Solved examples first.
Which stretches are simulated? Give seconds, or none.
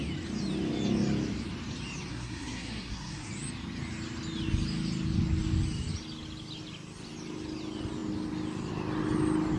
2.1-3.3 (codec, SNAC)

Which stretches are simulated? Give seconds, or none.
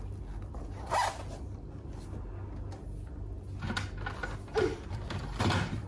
4.5-5.9 (vocoder, BigVGAN v2)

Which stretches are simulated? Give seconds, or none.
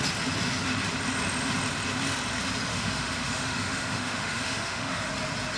2.7-5.1 (autoencoder, DAC-VAE)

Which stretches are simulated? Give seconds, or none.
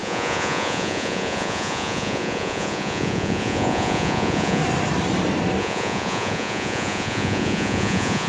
0.0-4.6 (vocoder, Vocos); 5.6-8.3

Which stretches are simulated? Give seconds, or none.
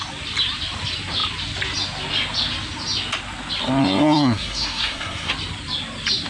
3.8-5.3 (codec, SNAC)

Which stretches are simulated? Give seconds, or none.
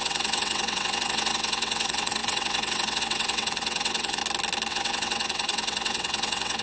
0.0-4.2 (vocoder, WaveNeXt); 4.7-6.6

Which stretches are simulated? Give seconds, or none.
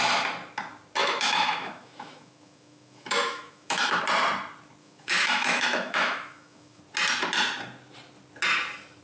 1.0-4.0 (autoencoder, DAC-VAE); 4.8-6.8